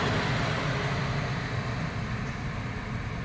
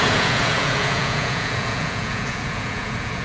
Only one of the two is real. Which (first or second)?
first